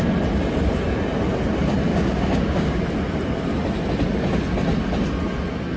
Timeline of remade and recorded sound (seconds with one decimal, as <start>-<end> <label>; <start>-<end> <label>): 0.0-1.9 recorded; 1.9-2.8 remade; 2.8-5.8 recorded